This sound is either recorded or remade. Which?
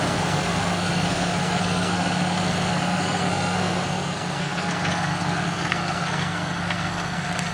remade